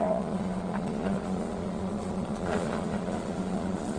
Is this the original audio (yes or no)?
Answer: no